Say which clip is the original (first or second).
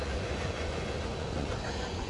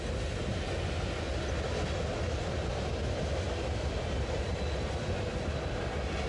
second